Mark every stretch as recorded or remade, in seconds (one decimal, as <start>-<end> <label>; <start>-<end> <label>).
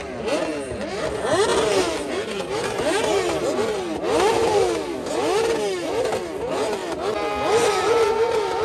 0.0-4.4 recorded; 4.4-5.1 remade; 5.1-8.6 recorded